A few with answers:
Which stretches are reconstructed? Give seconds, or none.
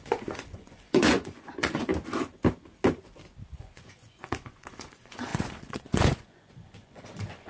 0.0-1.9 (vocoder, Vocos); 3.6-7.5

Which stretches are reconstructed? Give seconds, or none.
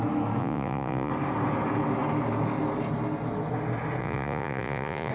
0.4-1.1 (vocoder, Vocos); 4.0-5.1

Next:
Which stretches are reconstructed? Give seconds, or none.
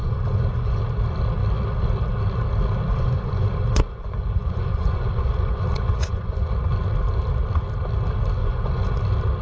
0.0-0.8 (vocoder, Vocos); 2.9-6.5; 8.4-9.0